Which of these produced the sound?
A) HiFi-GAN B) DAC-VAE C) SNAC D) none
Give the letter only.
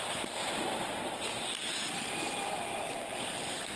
D